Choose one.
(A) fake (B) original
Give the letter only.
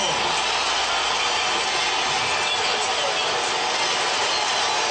B